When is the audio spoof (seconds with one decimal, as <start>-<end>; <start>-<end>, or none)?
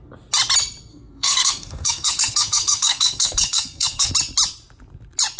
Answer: 0.9-4.1